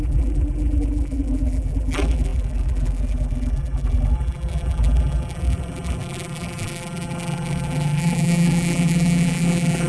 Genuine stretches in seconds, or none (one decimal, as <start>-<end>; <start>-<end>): none